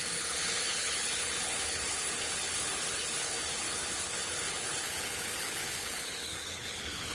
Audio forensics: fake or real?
fake